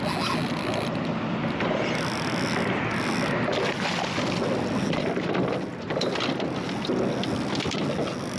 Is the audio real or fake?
real